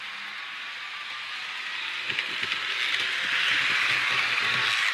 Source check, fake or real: real